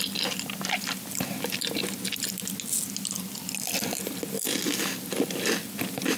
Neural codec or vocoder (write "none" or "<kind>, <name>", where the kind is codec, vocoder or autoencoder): none